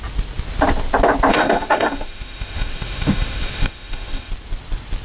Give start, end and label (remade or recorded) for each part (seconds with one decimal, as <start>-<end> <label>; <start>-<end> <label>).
0.0-1.3 recorded; 1.3-4.3 remade; 4.3-5.0 recorded